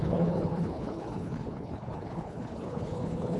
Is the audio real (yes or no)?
no